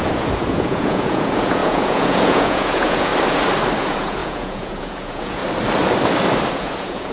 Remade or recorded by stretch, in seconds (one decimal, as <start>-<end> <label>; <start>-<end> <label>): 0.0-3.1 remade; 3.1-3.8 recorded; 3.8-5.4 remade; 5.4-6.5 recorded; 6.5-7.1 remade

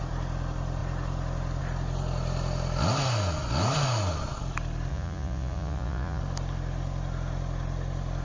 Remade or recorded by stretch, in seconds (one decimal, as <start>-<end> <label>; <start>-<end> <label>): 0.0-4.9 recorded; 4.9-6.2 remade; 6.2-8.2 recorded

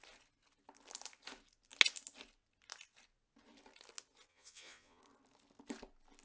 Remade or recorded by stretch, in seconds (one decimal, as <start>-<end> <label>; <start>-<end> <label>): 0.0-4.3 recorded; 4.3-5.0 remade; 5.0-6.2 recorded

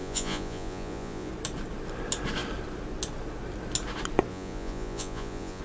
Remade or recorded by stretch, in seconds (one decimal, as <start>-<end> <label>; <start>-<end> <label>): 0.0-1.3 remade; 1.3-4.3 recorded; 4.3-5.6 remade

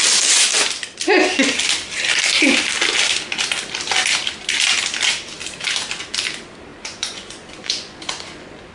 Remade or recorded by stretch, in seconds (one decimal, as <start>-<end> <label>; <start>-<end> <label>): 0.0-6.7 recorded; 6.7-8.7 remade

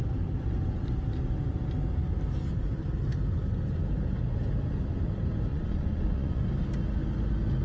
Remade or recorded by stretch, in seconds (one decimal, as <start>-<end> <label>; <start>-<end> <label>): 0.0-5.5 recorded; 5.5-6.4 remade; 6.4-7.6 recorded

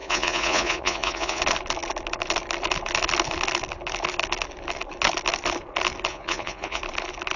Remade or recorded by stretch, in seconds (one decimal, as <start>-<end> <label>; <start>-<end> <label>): 0.0-1.4 remade; 1.4-6.1 recorded; 6.1-6.8 remade; 6.8-7.4 recorded